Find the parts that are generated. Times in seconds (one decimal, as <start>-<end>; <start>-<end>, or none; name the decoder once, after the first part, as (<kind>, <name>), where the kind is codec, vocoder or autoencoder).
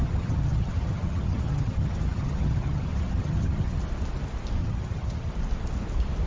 0.0-3.8 (vocoder, HiFi-GAN); 4.6-5.3